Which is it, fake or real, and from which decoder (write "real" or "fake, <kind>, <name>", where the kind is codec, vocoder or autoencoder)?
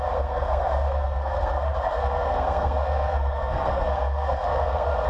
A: fake, codec, SNAC